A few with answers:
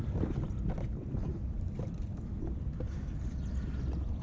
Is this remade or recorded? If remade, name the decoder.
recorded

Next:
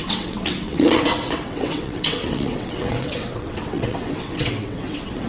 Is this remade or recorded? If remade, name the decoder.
remade, vocoder, WaveNeXt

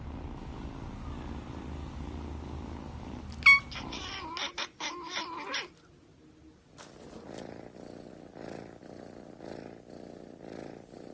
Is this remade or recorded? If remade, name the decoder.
recorded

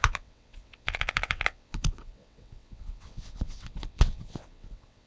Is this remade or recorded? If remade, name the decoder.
remade, vocoder, WaveNeXt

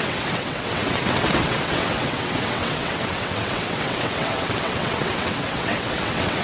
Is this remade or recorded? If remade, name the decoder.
remade, vocoder, WaveNeXt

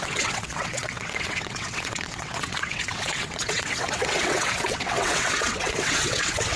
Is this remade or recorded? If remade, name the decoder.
remade, vocoder, WaveNeXt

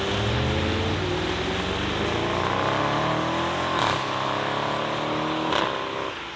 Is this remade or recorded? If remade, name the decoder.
recorded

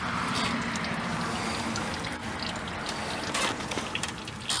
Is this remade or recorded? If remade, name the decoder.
recorded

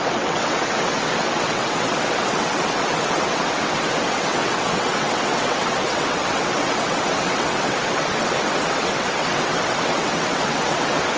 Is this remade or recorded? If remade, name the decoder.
remade, vocoder, WaveNeXt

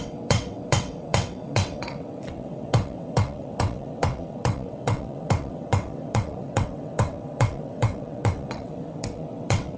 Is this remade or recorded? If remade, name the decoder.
remade, vocoder, WaveNeXt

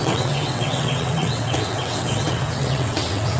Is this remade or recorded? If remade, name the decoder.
remade, vocoder, WaveNeXt